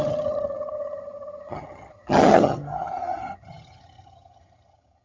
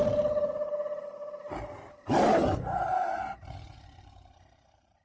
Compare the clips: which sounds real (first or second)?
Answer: second